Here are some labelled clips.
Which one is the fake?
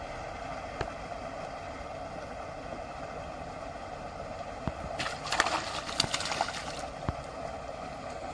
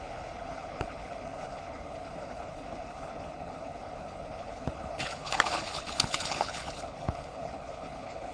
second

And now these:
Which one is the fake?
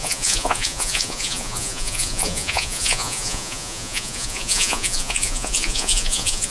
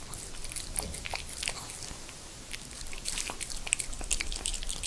first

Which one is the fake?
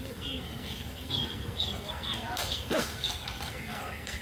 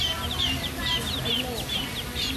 first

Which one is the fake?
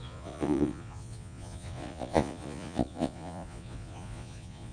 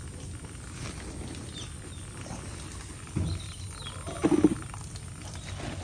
first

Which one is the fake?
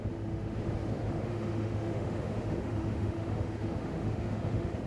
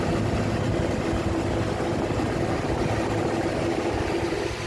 first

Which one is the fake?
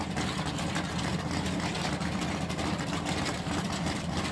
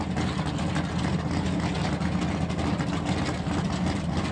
first